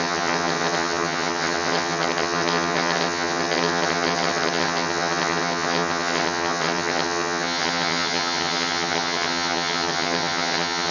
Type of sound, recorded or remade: remade